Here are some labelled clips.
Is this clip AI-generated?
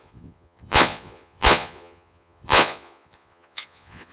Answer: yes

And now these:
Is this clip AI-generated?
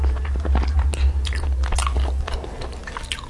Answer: no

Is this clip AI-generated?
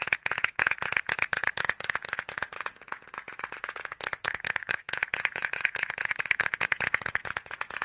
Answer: yes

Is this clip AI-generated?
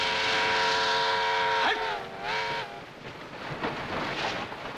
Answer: no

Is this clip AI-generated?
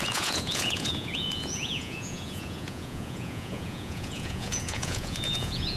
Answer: yes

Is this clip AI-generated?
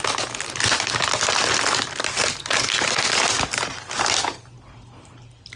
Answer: no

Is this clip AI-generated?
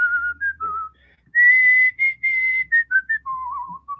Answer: no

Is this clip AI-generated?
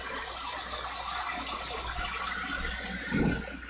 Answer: no